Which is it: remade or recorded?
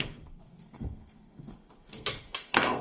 remade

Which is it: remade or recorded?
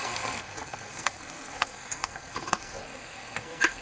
remade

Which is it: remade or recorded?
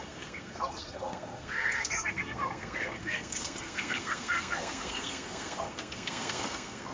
remade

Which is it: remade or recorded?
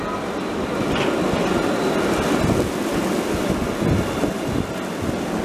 recorded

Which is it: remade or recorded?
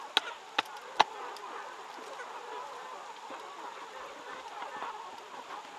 recorded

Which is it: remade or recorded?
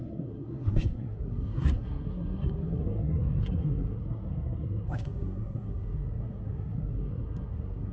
remade